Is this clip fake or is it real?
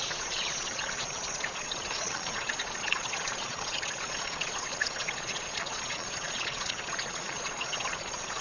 fake